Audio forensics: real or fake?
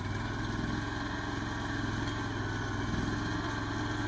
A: real